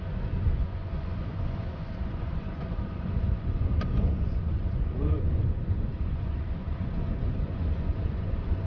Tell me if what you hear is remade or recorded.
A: remade